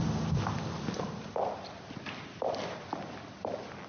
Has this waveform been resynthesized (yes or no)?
no